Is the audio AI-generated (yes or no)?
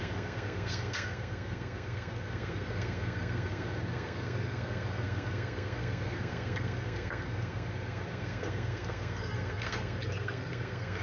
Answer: yes